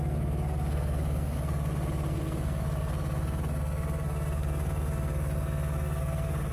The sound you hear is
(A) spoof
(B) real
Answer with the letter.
A